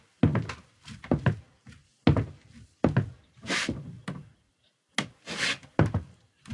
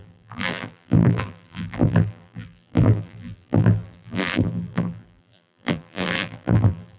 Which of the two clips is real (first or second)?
first